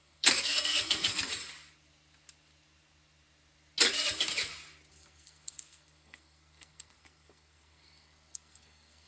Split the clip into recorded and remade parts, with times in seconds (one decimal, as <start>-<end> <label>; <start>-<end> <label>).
0.0-1.3 remade; 1.3-4.9 recorded; 4.9-9.1 remade